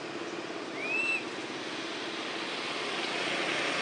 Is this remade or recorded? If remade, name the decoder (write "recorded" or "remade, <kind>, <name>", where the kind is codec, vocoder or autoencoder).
recorded